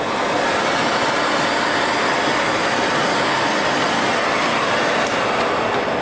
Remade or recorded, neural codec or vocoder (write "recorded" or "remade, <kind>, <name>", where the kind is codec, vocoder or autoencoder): recorded